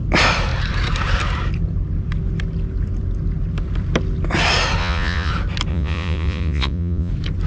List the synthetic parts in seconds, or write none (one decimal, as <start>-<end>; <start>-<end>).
4.8-5.3; 5.7-7.1